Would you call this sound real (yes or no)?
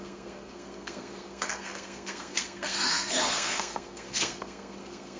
no